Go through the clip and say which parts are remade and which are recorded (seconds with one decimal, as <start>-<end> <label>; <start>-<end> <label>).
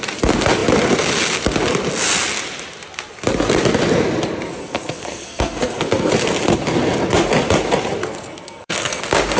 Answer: 0.0-4.6 recorded; 4.6-6.1 remade; 6.1-8.0 recorded; 8.0-9.0 remade; 9.0-9.4 recorded